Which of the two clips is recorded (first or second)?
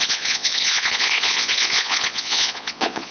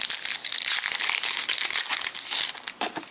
second